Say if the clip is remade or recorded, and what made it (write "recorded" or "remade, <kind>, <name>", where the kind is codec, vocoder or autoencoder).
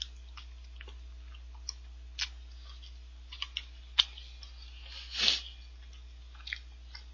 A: recorded